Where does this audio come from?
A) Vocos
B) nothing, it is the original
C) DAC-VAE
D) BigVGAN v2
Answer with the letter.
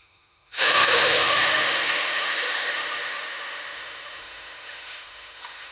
C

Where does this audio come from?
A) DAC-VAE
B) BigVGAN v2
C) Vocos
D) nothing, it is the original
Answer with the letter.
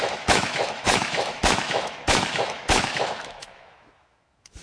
A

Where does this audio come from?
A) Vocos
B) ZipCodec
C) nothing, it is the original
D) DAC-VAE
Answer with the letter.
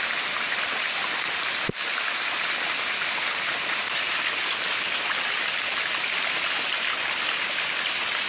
C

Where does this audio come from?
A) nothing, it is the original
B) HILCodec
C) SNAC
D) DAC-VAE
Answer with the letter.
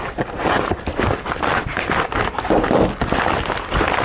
A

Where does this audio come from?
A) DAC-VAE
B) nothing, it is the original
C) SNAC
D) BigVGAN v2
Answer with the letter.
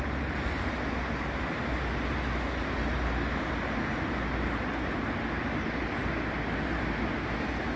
B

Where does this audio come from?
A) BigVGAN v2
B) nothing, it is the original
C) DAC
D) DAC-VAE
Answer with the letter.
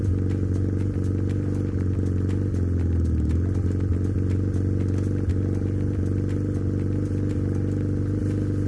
B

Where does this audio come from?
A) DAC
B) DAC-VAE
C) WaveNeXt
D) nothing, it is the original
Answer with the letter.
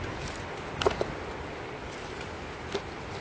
D